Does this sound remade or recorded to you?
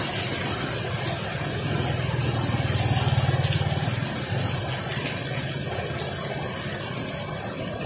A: recorded